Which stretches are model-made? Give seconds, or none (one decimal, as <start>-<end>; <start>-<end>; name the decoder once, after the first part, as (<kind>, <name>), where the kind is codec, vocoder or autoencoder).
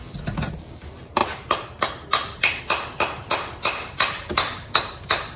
none